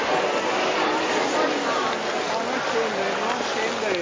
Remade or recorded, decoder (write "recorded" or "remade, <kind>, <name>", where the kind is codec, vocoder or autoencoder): recorded